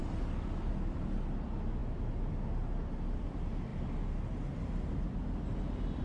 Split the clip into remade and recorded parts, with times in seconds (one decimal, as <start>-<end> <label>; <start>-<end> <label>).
0.0-6.0 recorded